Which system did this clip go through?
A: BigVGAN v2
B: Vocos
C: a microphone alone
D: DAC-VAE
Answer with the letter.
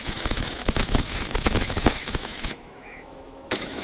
D